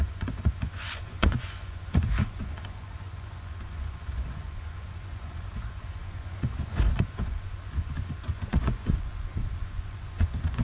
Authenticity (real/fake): fake